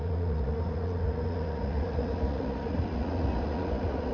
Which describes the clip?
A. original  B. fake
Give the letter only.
B